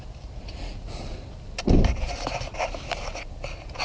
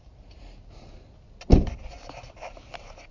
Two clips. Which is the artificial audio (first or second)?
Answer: first